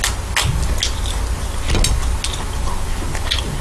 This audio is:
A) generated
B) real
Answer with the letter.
B